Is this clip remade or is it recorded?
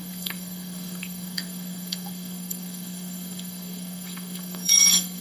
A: remade